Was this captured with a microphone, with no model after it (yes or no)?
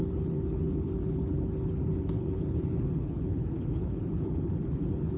no